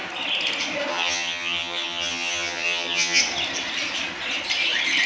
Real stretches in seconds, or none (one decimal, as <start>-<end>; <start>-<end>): 0.0-0.9; 3.2-5.1